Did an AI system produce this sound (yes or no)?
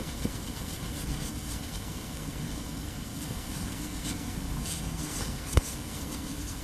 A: yes